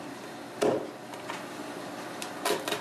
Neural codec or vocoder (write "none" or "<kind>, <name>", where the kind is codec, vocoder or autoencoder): none